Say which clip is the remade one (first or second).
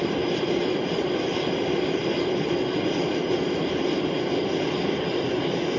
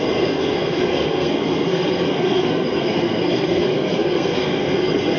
second